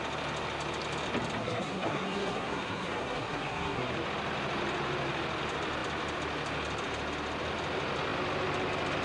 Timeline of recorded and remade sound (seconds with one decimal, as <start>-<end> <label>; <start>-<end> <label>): 0.0-1.4 recorded; 1.4-3.9 remade; 3.9-9.0 recorded